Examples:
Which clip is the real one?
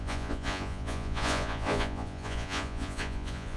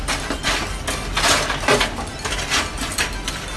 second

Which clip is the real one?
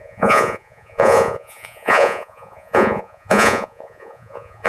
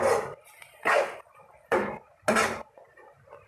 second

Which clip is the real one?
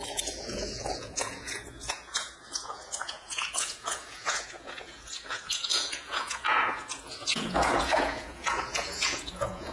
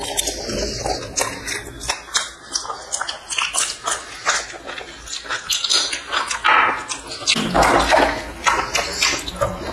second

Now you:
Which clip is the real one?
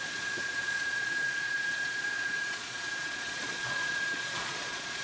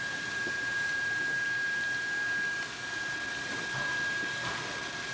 second